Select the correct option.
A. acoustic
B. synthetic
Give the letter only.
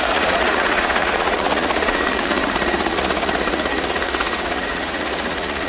B